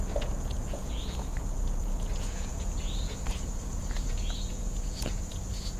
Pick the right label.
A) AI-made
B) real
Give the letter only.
A